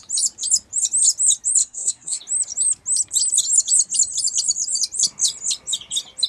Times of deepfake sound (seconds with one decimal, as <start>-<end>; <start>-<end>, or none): 1.6-2.2